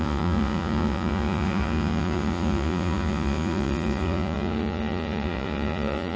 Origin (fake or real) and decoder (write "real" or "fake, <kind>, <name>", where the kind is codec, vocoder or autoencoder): fake, vocoder, Vocos